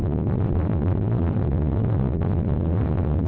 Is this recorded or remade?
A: remade